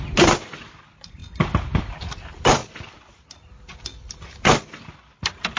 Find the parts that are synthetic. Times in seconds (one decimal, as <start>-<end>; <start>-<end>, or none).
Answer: none